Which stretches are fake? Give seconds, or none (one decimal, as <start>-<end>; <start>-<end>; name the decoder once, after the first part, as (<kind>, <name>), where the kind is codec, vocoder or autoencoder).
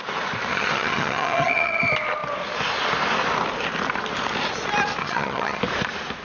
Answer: 0.5-1.8 (vocoder, HiFi-GAN); 5.0-5.6